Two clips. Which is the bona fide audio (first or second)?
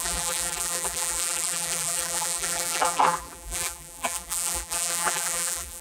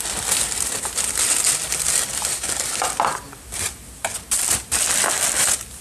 second